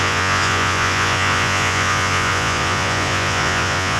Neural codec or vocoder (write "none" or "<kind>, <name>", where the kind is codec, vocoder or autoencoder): vocoder, Vocos